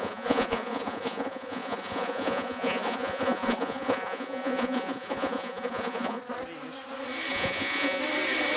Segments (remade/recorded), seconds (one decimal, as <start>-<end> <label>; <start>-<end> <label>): 0.0-6.2 remade; 6.2-7.3 recorded; 7.3-8.0 remade; 8.0-8.6 recorded